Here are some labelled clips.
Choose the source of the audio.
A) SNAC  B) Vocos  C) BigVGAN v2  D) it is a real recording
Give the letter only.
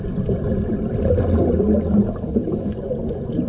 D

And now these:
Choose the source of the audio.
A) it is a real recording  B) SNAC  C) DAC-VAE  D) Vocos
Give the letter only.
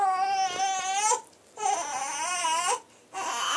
A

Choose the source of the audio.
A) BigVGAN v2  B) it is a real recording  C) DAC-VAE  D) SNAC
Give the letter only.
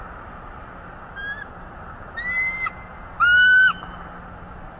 B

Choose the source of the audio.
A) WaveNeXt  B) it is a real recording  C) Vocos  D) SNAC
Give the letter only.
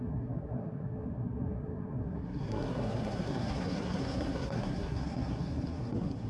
D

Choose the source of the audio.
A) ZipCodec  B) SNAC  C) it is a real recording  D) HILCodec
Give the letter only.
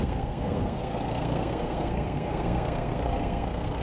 B